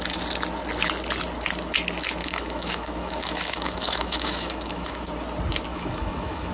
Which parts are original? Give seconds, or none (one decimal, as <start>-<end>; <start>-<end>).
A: 0.0-2.2; 5.0-5.7